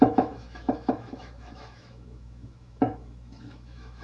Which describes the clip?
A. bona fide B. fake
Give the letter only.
B